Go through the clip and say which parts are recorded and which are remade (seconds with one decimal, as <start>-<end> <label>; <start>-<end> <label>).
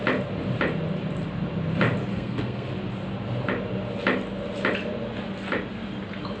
0.0-2.1 recorded; 2.1-2.7 remade; 2.7-6.4 recorded